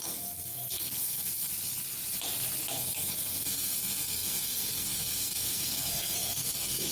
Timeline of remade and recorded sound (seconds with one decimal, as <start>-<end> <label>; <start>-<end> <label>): 0.0-1.5 remade; 1.5-2.7 recorded; 2.7-6.9 remade